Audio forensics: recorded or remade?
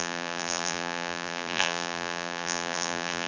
remade